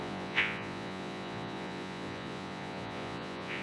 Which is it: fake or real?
fake